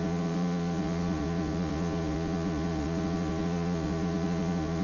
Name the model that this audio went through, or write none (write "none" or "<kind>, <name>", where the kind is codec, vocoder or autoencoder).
vocoder, Vocos